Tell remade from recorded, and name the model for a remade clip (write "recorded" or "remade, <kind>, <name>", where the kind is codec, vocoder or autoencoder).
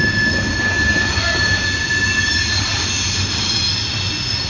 recorded